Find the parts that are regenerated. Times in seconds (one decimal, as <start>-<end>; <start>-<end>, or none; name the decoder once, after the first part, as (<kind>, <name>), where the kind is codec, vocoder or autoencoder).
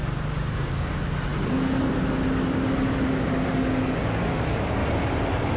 0.0-0.9 (codec, DAC)